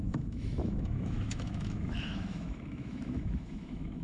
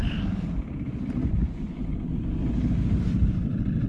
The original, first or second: second